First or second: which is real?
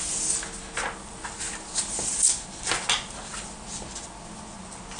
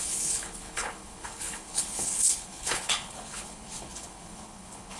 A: first